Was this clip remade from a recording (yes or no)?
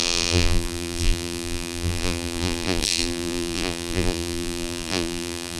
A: yes